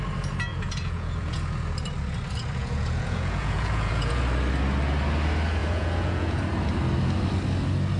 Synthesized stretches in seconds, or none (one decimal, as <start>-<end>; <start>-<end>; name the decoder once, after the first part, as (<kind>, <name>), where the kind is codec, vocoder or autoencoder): 0.5-1.4 (vocoder, Vocos); 2.6-4.2; 5.6-6.4